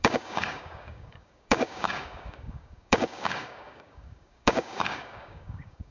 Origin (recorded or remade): remade